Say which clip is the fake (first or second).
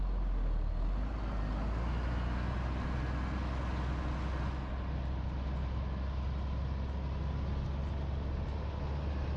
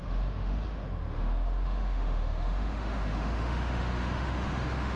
second